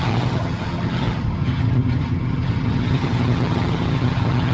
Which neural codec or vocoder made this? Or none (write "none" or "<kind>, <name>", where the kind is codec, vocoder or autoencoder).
vocoder, HiFi-GAN